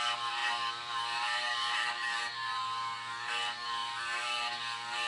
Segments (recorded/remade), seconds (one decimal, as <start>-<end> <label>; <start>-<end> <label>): 0.0-5.1 remade